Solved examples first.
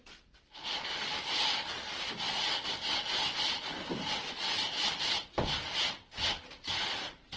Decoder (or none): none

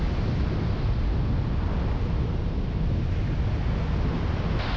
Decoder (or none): none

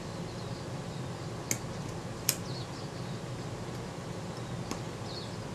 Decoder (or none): none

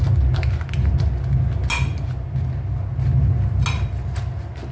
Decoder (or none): none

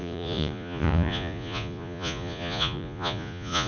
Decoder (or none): vocoder, Vocos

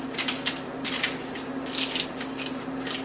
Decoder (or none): none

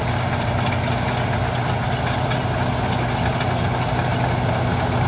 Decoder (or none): none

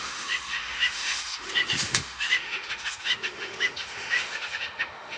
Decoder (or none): autoencoder, DAC-VAE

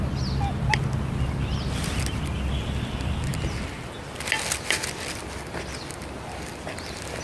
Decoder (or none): none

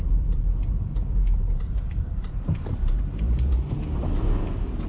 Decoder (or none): vocoder, BigVGAN v2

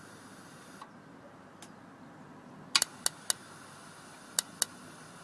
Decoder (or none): none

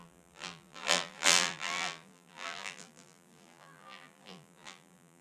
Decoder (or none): vocoder, BigVGAN v2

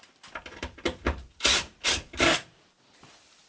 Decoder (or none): vocoder, BigVGAN v2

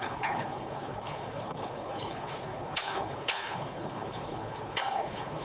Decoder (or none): codec, HILCodec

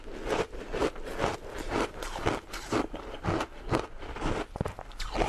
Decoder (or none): none